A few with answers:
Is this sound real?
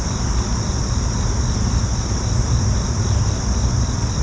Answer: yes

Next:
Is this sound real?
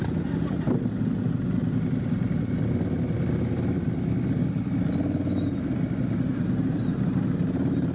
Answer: yes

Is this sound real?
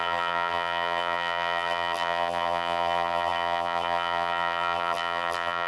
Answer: no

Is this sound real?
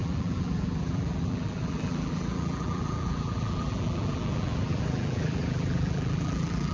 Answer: no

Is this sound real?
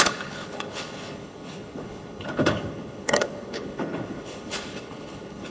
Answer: no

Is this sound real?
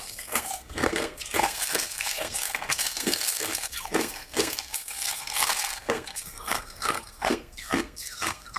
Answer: no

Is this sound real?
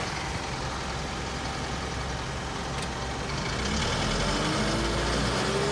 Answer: yes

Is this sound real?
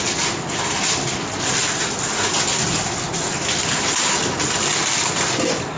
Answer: yes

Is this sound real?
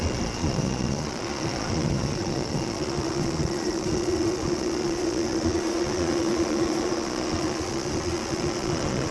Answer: no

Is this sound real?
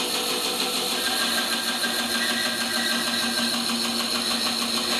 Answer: yes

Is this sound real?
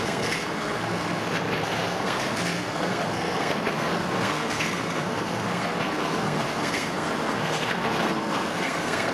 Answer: no